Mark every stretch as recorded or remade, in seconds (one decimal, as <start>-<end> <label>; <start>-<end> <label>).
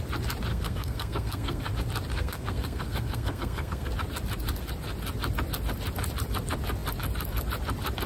0.0-0.5 recorded; 0.5-1.7 remade; 1.7-2.1 recorded; 2.1-3.9 remade; 3.9-8.1 recorded